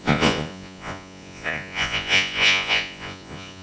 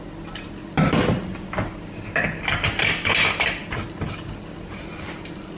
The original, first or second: second